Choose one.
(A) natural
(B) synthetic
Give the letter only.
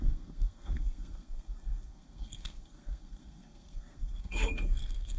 B